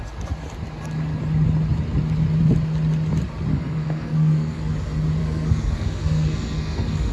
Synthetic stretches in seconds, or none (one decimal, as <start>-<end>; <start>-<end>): 3.5-4.7; 5.2-7.1